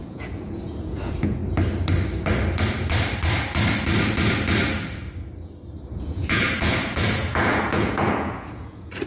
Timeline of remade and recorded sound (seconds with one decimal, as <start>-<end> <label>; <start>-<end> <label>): 0.0-1.4 remade; 1.4-6.0 recorded; 6.0-9.1 remade